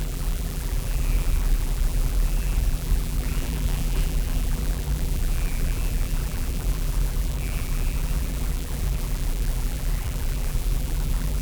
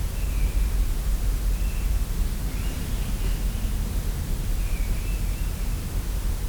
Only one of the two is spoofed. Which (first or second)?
first